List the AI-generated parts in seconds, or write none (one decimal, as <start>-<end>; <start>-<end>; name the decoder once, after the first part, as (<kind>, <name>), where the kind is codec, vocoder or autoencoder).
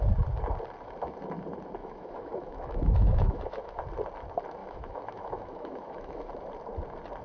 1.8-3.8 (autoencoder, DAC-VAE); 4.6-6.3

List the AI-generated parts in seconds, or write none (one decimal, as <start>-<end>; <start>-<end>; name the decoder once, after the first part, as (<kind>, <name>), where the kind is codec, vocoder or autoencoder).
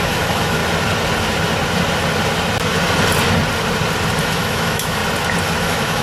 0.0-0.6 (autoencoder, DAC-VAE); 4.2-5.0; 5.6-6.0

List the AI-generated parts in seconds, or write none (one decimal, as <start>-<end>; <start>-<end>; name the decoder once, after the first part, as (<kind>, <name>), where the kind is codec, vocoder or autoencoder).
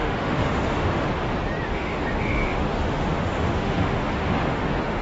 0.0-1.1 (autoencoder, DAC-VAE); 1.7-5.0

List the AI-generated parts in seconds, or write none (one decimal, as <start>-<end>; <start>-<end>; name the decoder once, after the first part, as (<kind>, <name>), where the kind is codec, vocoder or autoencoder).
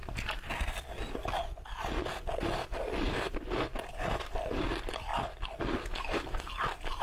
none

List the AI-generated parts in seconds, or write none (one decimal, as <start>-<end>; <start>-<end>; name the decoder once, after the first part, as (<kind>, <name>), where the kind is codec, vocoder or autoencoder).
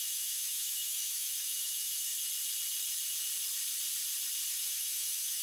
0.0-2.1 (autoencoder, DAC-VAE); 4.5-5.4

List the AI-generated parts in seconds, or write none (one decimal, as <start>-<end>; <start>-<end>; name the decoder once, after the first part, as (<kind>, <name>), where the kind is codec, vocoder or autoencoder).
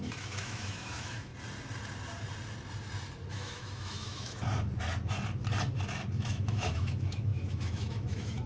0.0-1.3 (autoencoder, DAC-VAE); 3.3-4.4; 6.2-8.5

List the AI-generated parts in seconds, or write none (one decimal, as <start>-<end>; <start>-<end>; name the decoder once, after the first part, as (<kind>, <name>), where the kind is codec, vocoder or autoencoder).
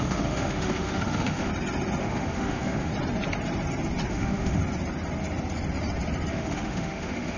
0.0-1.5 (autoencoder, DAC-VAE); 2.0-2.9; 4.1-4.6; 6.3-7.4